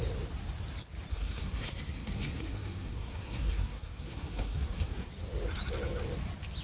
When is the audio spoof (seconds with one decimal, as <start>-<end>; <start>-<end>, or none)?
1.1-5.1